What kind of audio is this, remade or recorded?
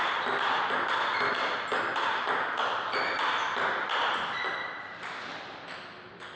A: recorded